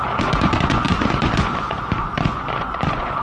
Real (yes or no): no